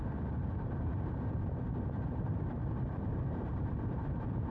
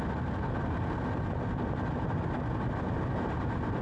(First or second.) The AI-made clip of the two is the first